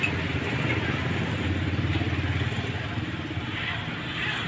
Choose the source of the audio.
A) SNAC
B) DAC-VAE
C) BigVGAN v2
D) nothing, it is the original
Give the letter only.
D